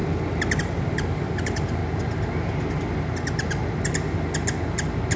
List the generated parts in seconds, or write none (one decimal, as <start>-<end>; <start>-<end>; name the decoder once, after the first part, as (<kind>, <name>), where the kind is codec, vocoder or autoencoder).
0.6-1.8 (vocoder, BigVGAN v2)